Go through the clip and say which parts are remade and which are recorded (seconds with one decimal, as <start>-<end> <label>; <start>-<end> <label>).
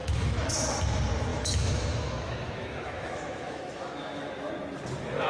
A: 0.0-0.5 remade; 0.5-1.3 recorded; 1.3-4.5 remade; 4.5-5.3 recorded